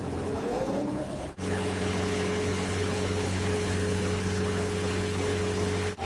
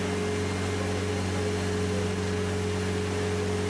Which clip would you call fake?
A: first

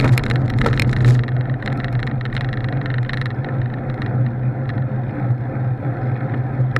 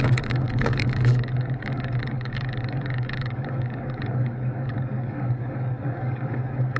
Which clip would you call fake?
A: second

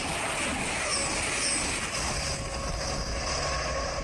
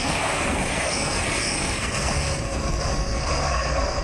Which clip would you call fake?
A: second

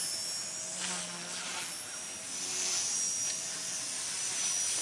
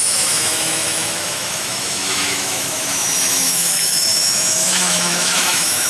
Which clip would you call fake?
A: second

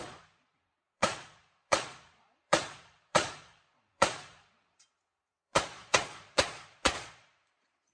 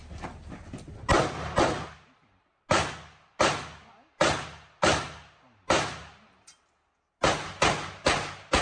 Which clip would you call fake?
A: first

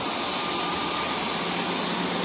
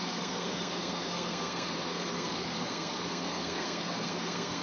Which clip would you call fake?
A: second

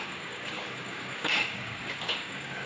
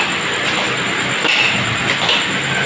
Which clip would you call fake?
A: first